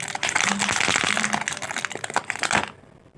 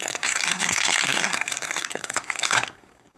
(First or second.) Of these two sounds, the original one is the first